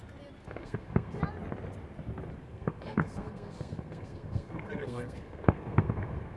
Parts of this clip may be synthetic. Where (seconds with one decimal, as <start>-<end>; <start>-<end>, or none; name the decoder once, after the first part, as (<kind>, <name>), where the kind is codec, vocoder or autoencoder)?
0.4-1.2 (codec, SNAC); 2.4-6.4